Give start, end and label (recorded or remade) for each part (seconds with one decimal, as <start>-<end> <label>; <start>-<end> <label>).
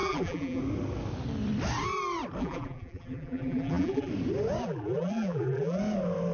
0.0-0.6 remade; 0.6-2.4 recorded; 2.4-4.1 remade; 4.1-4.6 recorded; 4.6-5.8 remade; 5.8-6.3 recorded